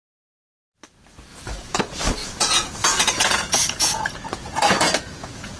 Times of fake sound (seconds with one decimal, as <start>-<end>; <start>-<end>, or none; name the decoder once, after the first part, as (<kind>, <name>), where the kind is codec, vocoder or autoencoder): 1.3-1.8 (vocoder, Vocos); 2.2-5.6